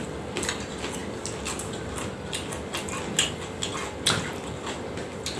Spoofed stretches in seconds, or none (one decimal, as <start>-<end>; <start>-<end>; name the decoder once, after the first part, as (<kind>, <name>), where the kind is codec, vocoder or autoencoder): none